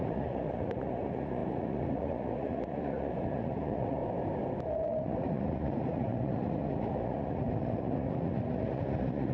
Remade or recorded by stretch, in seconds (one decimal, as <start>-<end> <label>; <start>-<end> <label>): 0.0-4.0 remade; 4.0-4.7 recorded; 4.7-9.3 remade